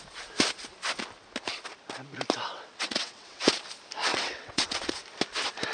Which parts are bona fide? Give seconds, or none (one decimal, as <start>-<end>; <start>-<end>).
0.0-2.5; 3.5-4.1; 4.9-5.7